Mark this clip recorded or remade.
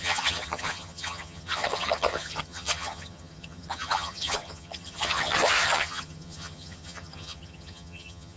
remade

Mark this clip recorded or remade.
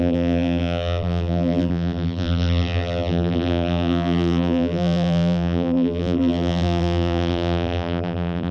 remade